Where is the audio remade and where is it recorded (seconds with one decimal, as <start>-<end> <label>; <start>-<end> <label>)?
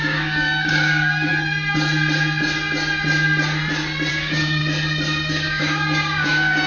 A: 0.0-1.3 remade; 1.3-4.1 recorded; 4.1-4.6 remade; 4.6-5.3 recorded; 5.3-6.7 remade